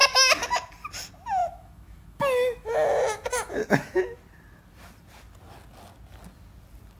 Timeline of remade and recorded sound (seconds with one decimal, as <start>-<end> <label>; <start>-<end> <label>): 0.0-0.7 remade; 0.7-1.4 recorded; 1.4-4.0 remade; 4.0-7.0 recorded